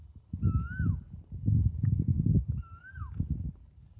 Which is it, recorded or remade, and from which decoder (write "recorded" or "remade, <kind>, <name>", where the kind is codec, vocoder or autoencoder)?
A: recorded